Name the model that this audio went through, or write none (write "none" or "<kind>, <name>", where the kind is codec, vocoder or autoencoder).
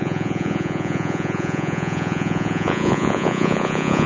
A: vocoder, Vocos